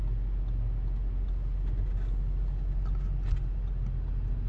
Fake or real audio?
real